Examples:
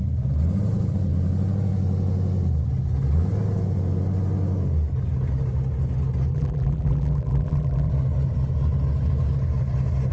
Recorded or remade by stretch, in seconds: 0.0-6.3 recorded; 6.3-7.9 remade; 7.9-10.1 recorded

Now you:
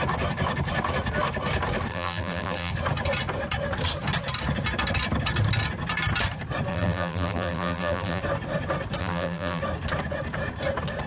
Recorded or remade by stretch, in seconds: 0.0-1.9 recorded; 1.9-2.7 remade; 2.7-6.7 recorded; 6.7-8.2 remade; 8.2-9.0 recorded; 9.0-9.6 remade; 9.6-11.1 recorded

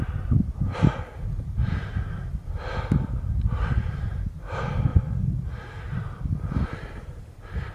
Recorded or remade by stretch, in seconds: 0.0-4.9 remade; 4.9-6.3 recorded; 6.3-7.7 remade

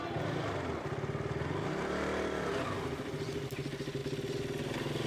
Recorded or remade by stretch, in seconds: 0.0-5.1 recorded

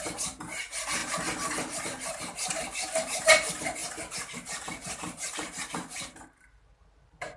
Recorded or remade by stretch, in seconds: 0.0-1.0 remade; 1.0-1.8 recorded; 1.8-7.4 remade

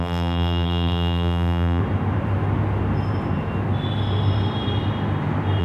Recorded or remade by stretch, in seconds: 0.0-1.8 remade; 1.8-5.6 recorded

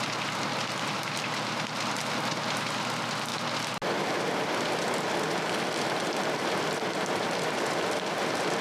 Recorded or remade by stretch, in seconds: 0.0-8.6 recorded